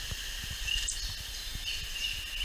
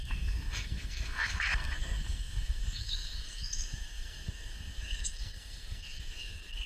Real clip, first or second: first